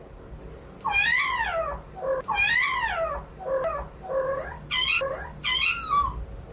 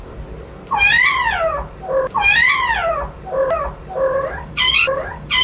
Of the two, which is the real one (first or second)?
first